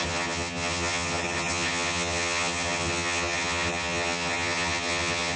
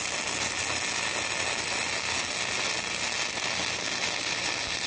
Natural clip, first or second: second